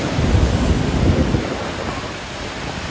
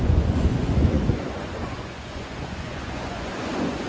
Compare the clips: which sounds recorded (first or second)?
first